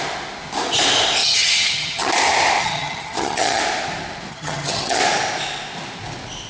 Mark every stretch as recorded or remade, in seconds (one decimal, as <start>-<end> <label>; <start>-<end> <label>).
0.0-1.2 recorded; 1.2-2.1 remade; 2.1-2.6 recorded; 2.6-3.6 remade; 3.6-4.3 recorded; 4.3-5.0 remade; 5.0-6.5 recorded